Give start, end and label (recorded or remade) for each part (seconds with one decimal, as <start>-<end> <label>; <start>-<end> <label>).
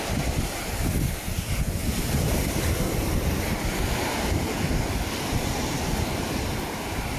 0.0-1.8 recorded; 1.8-3.4 remade; 3.4-7.2 recorded